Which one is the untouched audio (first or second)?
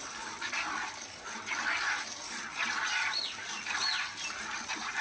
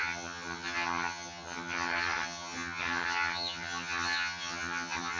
first